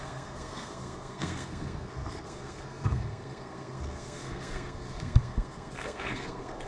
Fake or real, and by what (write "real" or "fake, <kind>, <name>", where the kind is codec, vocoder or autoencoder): fake, codec, SNAC